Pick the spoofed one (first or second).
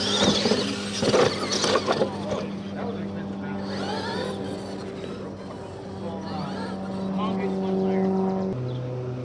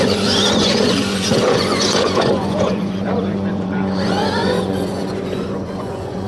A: second